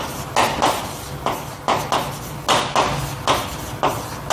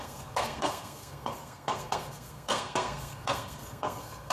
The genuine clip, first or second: first